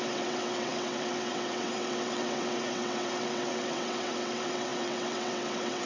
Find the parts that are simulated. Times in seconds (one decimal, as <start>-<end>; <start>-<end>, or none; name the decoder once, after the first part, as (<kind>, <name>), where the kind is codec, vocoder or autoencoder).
0.0-5.8 (vocoder, WaveNeXt)